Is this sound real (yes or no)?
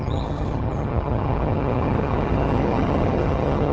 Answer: no